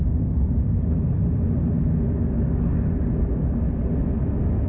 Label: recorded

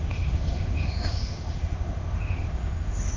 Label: remade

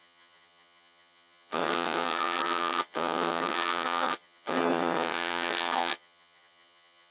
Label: remade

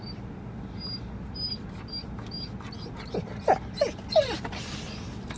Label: recorded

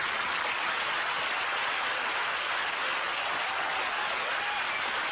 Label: recorded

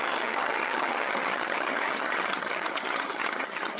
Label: remade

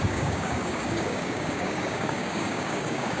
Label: remade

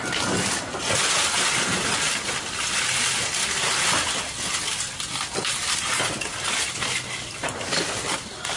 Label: recorded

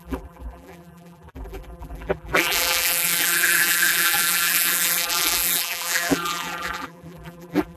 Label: remade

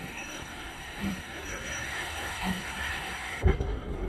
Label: remade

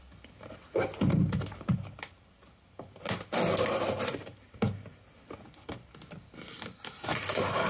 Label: recorded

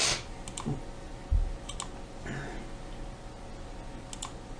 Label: recorded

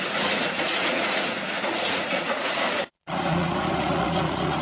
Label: remade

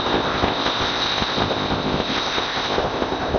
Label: remade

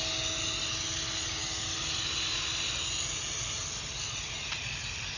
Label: recorded